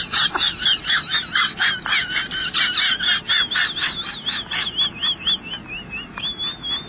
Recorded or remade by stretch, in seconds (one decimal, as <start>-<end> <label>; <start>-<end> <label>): 0.0-6.9 recorded

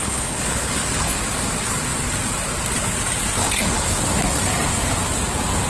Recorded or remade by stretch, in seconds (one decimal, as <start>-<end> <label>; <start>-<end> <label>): 0.0-1.2 remade; 1.2-3.4 recorded; 3.4-4.0 remade; 4.0-5.7 recorded

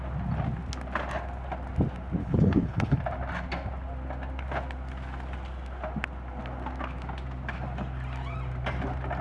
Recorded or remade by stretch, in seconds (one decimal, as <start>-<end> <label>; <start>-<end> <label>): 0.0-2.2 recorded; 2.2-3.0 remade; 3.0-9.2 recorded

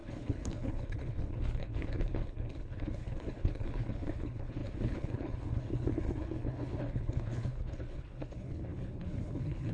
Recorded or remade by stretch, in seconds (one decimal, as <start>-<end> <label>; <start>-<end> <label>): 0.0-9.7 remade

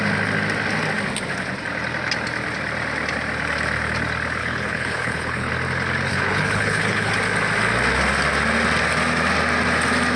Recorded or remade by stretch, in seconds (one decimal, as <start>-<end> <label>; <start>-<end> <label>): 0.0-4.4 recorded; 4.4-5.5 remade; 5.5-6.1 recorded; 6.1-7.1 remade; 7.1-10.2 recorded

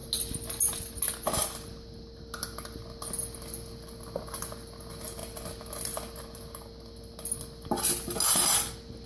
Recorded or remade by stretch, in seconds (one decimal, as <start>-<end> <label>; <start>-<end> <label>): 0.0-9.1 recorded

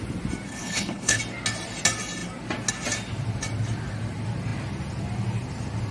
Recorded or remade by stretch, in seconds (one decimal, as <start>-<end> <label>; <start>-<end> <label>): 0.0-0.5 recorded; 0.5-1.2 remade; 1.2-5.9 recorded